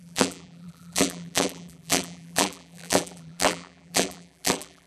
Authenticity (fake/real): fake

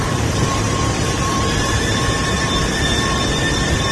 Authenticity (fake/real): fake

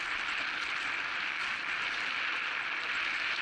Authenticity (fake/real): real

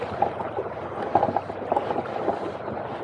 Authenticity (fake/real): real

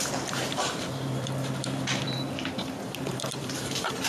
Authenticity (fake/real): fake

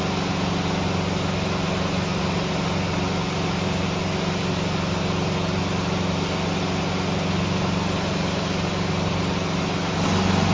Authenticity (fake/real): real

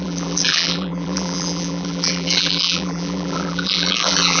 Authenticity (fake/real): fake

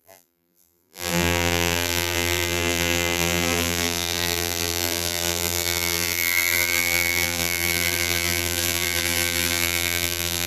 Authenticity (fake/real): fake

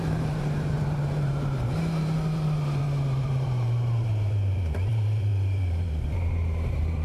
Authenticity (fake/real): fake